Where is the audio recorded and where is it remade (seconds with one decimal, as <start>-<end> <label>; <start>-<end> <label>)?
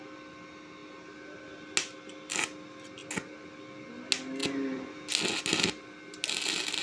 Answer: 0.0-6.8 recorded